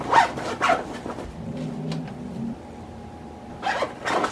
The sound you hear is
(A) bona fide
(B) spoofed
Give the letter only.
A